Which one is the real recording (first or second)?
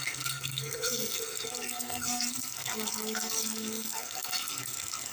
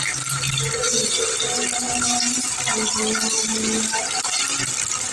second